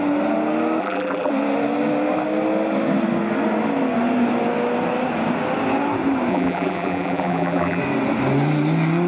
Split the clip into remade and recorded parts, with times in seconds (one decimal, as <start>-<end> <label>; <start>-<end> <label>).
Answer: 0.0-0.8 recorded; 0.8-1.3 remade; 1.3-6.3 recorded; 6.3-7.8 remade; 7.8-9.1 recorded